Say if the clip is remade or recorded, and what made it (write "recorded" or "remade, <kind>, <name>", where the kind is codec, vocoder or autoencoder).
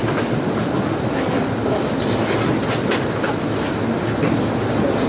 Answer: recorded